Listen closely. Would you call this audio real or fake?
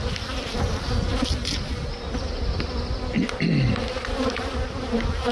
real